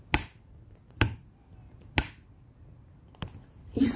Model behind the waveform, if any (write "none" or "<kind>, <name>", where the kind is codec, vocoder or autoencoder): none